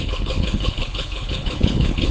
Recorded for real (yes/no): no